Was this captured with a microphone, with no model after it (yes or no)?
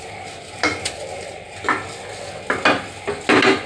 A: yes